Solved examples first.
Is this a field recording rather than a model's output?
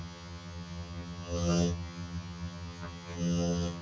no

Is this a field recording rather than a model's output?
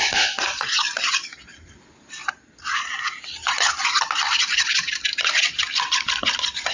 yes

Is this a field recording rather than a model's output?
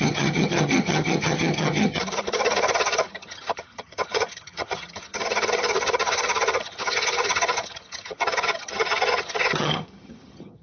no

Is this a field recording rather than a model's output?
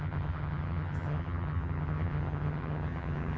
no